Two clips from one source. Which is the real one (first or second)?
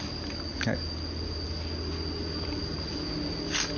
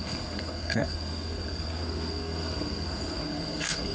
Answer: first